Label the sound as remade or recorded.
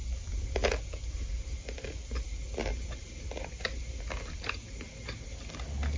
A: recorded